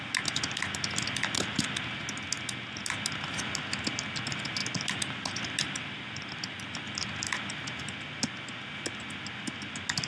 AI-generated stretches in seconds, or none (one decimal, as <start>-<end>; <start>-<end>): none